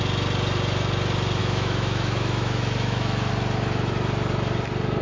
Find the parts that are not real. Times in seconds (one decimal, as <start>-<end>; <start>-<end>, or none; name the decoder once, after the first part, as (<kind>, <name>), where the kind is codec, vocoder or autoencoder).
1.4-3.3 (autoencoder, DAC-VAE)